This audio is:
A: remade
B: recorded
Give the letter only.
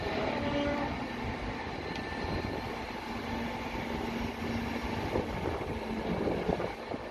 B